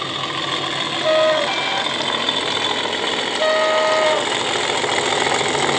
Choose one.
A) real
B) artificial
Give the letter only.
A